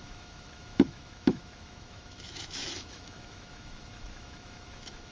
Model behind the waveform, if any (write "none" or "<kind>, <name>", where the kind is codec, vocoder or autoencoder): autoencoder, DAC-VAE